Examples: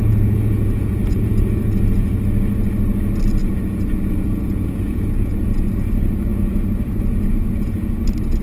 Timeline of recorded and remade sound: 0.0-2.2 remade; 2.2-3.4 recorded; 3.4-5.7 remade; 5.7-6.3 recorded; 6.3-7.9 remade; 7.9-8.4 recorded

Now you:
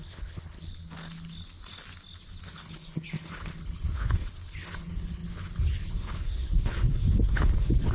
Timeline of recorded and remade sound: 0.0-0.7 remade; 0.7-2.5 recorded; 2.5-7.9 remade

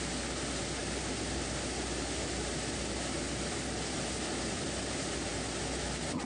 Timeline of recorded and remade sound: 0.0-6.3 recorded

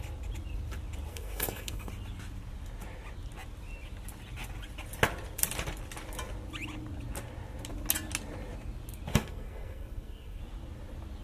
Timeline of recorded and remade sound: 0.0-1.1 recorded; 1.1-1.9 remade; 1.9-9.1 recorded; 9.1-10.4 remade; 10.4-11.2 recorded

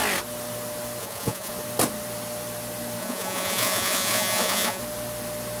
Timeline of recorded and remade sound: 0.0-1.0 recorded; 1.0-1.5 remade; 1.5-3.0 recorded; 3.0-4.8 remade; 4.8-5.6 recorded

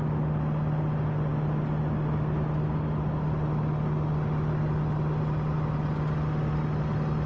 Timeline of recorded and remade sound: 0.0-7.3 recorded

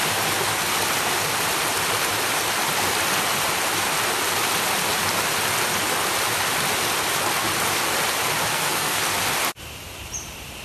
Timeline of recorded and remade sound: 0.0-8.5 recorded; 8.5-9.0 remade; 9.0-10.6 recorded

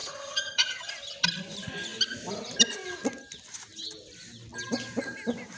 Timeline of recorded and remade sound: 0.0-0.9 remade; 0.9-5.6 recorded